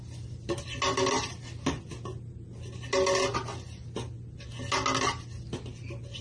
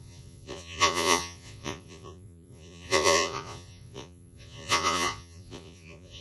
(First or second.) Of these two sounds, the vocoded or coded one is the second